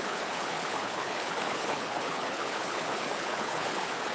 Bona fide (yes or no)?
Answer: no